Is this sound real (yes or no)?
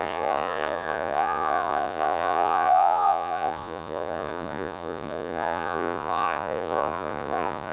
no